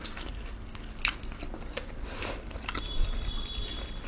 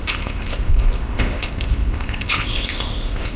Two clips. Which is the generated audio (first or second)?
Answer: second